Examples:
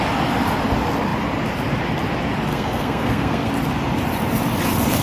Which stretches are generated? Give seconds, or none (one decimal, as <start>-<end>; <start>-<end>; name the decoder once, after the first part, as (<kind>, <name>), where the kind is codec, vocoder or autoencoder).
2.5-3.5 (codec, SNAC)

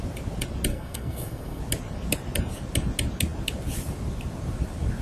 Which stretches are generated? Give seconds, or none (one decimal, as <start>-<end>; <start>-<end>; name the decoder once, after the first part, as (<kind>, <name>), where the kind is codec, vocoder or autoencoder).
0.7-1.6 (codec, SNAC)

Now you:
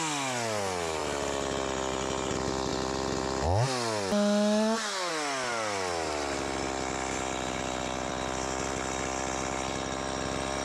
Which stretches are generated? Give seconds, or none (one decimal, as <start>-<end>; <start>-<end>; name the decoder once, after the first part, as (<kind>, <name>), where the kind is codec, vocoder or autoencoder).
none

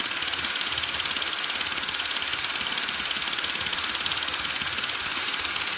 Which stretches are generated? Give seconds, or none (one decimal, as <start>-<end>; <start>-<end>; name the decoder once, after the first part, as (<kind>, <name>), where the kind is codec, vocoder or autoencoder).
none

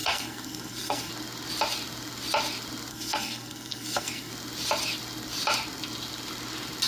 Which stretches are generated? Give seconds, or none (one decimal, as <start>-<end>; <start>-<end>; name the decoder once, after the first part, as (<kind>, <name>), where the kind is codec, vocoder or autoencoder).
0.0-1.1 (codec, SNAC); 2.9-4.3

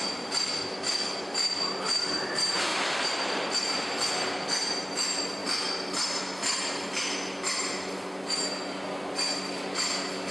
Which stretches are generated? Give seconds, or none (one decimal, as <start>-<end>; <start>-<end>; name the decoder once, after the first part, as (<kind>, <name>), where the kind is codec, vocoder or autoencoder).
none

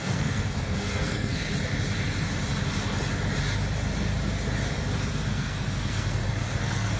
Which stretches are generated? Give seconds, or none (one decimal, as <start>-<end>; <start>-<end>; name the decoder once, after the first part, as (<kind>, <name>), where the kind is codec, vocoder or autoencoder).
0.0-1.5 (codec, SNAC); 5.3-7.0